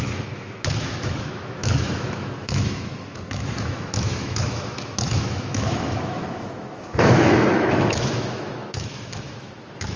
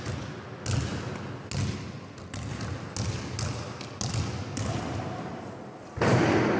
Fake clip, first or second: first